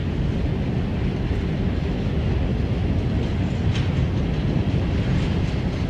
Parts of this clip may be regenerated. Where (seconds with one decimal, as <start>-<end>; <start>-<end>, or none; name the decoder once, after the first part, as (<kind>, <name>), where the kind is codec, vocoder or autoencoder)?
none